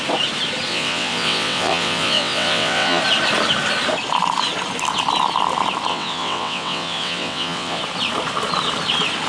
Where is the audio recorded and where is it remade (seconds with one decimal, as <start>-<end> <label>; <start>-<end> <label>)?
0.0-0.7 recorded; 0.7-3.0 remade; 3.0-5.9 recorded; 5.9-7.8 remade; 7.8-9.3 recorded